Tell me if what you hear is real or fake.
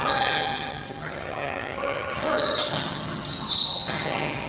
fake